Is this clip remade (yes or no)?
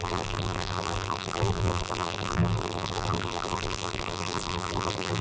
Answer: yes